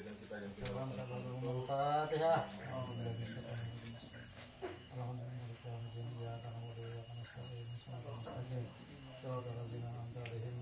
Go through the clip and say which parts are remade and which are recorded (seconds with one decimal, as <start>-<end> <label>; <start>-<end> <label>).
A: 0.0-4.3 recorded; 4.3-5.8 remade; 5.8-8.3 recorded; 8.3-9.4 remade; 9.4-10.6 recorded